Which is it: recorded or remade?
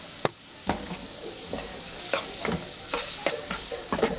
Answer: remade